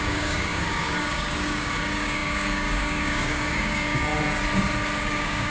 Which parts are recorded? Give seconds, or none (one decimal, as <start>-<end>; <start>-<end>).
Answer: 4.1-5.0